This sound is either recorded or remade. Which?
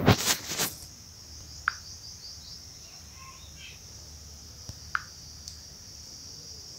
recorded